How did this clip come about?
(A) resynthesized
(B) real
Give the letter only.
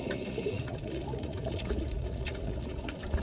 A